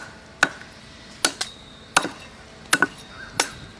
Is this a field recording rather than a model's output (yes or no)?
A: yes